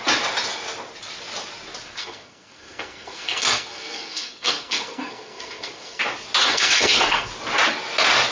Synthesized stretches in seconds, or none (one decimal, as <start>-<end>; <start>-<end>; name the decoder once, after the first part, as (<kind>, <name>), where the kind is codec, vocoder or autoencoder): 2.0-6.0 (codec, SNAC); 6.4-7.3